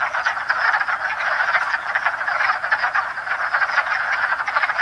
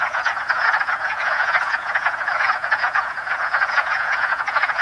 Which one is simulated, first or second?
second